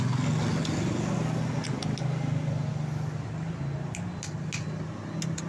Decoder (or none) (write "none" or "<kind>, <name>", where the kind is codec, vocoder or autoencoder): none